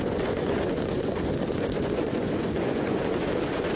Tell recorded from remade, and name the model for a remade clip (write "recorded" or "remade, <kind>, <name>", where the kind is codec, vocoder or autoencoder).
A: remade, vocoder, Vocos